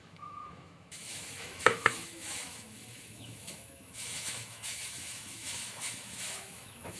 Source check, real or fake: fake